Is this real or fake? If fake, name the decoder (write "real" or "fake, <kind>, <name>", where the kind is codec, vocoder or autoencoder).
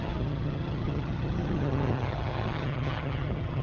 fake, vocoder, HiFi-GAN